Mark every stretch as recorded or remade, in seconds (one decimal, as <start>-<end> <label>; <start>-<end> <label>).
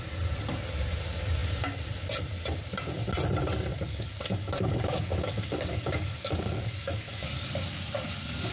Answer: 0.0-3.7 recorded; 3.7-8.5 remade